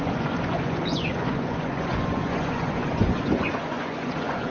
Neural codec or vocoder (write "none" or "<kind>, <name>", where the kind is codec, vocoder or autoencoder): vocoder, Vocos